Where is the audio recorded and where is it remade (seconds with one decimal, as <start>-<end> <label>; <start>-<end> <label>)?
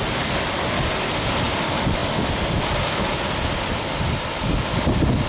0.0-5.3 recorded